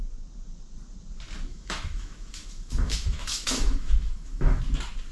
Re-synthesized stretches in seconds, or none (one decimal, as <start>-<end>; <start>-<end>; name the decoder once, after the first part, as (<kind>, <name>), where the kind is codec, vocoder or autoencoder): 1.5-4.6 (autoencoder, DAC-VAE)